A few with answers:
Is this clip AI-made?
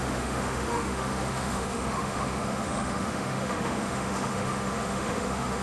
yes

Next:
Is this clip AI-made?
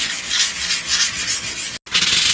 no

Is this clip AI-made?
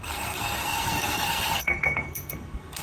yes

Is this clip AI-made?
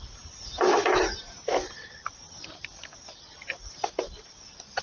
no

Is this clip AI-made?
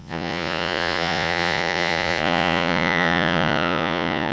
yes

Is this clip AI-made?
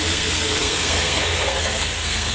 yes